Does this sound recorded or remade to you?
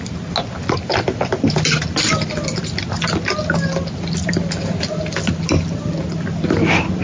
recorded